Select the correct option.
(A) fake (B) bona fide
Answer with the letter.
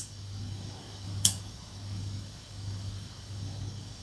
A